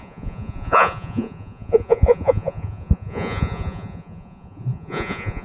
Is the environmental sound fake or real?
fake